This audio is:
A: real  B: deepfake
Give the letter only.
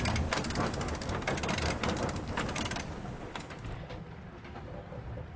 A